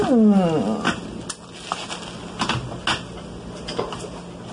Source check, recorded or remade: recorded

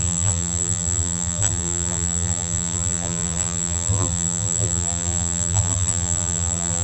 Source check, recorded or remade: remade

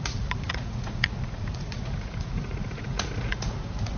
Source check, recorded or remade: remade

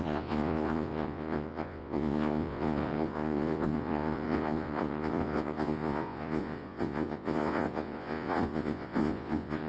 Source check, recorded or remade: remade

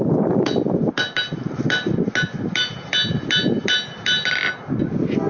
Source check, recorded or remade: recorded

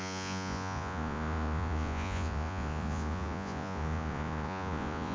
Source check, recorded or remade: remade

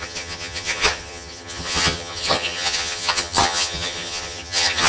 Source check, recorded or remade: remade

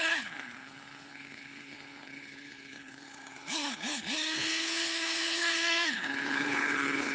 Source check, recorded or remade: remade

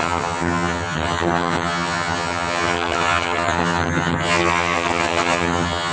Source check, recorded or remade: remade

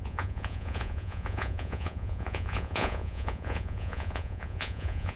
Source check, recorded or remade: remade